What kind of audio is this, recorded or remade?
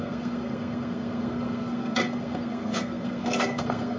remade